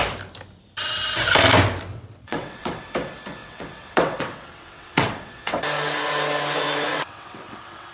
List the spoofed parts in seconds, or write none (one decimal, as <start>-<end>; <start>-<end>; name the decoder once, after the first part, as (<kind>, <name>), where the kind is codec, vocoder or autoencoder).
1.9-2.8 (vocoder, WaveNeXt); 3.4-5.6; 6.9-7.9